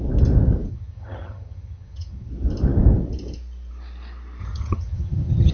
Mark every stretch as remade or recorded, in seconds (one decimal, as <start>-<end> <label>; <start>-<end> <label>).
0.0-0.7 recorded; 0.7-2.3 remade; 2.3-4.4 recorded; 4.4-5.5 remade